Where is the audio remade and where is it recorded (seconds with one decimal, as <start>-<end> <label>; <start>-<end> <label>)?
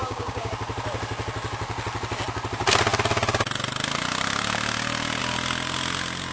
0.0-0.5 remade; 0.5-6.3 recorded